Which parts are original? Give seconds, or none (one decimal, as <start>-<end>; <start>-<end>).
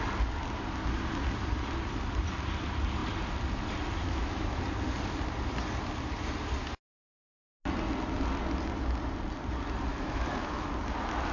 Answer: 0.0-4.0; 4.6-9.9; 10.7-11.3